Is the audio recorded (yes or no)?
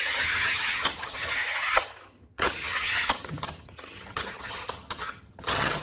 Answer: no